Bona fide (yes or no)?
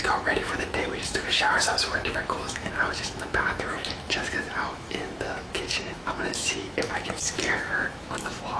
no